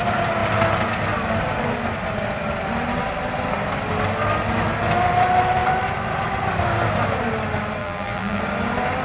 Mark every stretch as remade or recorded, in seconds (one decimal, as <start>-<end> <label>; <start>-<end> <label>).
0.0-7.8 recorded; 7.8-8.4 remade; 8.4-9.0 recorded